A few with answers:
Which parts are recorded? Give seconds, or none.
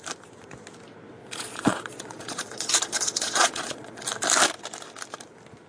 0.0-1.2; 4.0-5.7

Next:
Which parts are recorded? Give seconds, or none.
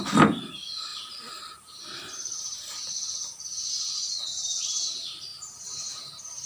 0.0-0.9; 3.7-6.5